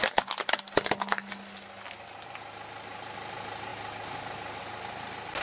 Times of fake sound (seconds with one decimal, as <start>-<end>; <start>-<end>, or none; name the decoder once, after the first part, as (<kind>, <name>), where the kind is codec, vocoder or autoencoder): none